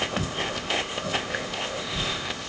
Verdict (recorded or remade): remade